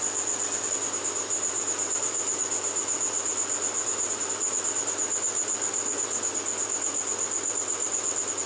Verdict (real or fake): real